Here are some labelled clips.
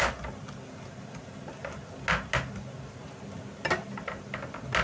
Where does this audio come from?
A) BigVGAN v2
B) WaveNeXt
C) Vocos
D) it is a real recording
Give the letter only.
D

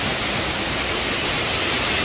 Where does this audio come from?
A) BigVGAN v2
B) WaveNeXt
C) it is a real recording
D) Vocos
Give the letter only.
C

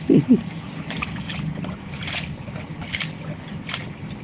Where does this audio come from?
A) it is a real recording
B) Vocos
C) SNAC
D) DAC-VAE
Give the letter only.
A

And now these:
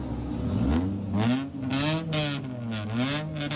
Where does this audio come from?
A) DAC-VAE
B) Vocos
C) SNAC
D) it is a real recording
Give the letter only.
D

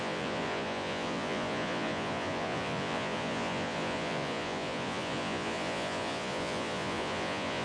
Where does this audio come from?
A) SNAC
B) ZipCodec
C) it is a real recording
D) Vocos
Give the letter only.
D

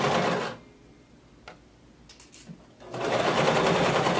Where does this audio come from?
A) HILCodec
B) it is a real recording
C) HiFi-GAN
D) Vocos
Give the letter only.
B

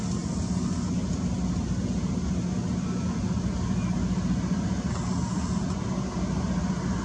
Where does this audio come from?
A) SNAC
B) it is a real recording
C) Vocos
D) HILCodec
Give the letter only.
B